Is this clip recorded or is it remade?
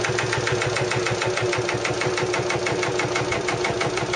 recorded